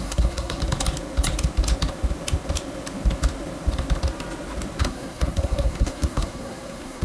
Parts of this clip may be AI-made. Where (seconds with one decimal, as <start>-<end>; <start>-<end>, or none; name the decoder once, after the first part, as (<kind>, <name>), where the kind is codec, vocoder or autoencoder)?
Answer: 0.0-0.6 (codec, SNAC); 4.8-7.0